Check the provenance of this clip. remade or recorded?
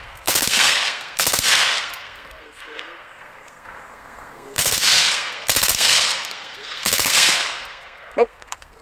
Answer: remade